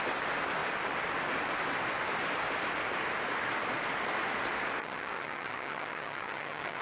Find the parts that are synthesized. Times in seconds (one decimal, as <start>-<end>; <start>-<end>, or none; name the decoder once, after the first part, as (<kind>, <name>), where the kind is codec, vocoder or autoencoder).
4.8-6.8 (vocoder, HiFi-GAN)